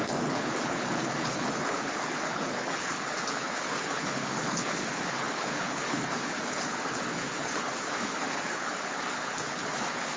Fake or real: fake